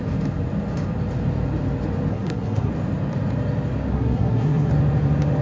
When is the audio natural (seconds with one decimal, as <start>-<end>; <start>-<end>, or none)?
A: 0.0-2.1; 2.7-3.9; 4.7-5.4